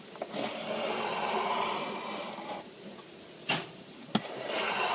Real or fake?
real